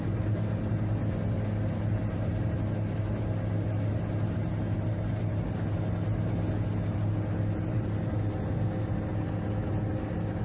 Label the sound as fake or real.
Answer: real